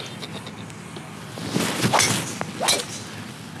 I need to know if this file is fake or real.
real